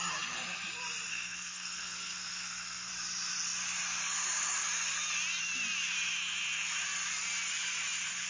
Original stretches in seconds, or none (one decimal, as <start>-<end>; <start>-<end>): 0.0-1.1; 2.9-8.3